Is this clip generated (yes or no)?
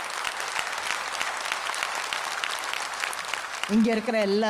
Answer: no